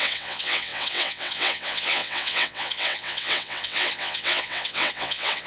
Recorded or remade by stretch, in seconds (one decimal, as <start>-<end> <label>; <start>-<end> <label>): 0.0-5.5 remade